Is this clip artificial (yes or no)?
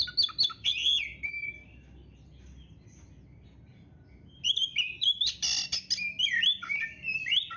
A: no